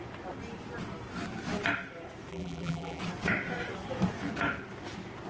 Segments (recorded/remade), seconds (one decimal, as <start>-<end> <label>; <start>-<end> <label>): 0.0-2.3 recorded; 2.3-3.0 remade; 3.0-5.3 recorded